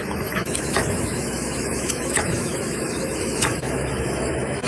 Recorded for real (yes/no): no